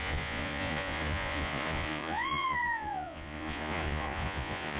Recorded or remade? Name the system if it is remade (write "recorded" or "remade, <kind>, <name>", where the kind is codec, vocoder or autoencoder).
remade, vocoder, Vocos